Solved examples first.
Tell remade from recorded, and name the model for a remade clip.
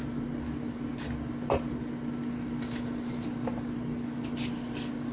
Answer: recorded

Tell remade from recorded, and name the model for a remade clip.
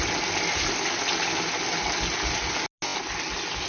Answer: recorded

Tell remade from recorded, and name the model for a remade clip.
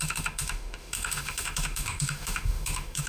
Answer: remade, autoencoder, DAC-VAE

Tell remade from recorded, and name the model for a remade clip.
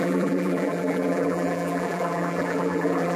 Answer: remade, vocoder, BigVGAN v2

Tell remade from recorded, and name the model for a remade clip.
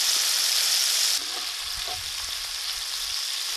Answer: recorded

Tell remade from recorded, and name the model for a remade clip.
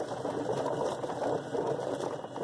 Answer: recorded